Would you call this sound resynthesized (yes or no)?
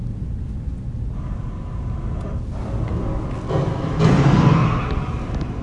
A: no